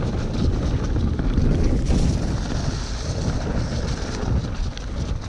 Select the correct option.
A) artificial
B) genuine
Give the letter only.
B